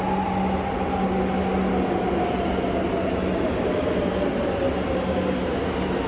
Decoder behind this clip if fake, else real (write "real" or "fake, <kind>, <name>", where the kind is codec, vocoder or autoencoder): real